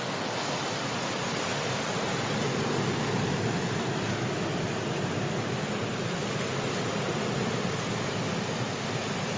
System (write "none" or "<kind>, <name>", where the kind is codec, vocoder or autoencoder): none